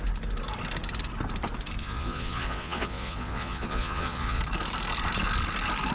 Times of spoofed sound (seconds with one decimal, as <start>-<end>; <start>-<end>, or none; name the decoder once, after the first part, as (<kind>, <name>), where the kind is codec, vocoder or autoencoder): 1.8-4.4 (vocoder, Vocos)

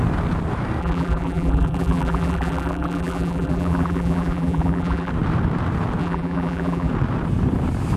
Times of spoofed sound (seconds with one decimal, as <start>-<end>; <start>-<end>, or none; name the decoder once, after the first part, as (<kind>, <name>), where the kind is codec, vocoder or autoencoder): 0.8-5.1 (vocoder, BigVGAN v2); 6.0-6.9